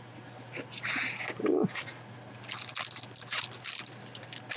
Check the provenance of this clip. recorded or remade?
recorded